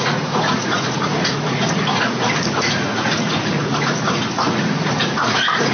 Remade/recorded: remade